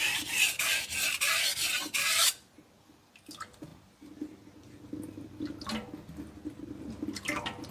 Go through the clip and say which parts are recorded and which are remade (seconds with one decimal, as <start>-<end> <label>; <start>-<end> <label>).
0.0-7.7 recorded

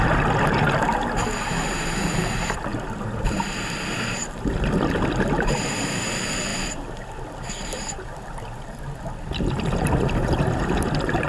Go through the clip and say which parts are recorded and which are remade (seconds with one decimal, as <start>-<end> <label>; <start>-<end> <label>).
0.0-11.3 recorded

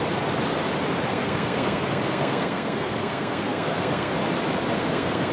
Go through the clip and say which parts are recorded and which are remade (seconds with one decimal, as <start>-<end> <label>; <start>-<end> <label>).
0.0-1.1 recorded; 1.1-4.1 remade; 4.1-4.8 recorded; 4.8-5.3 remade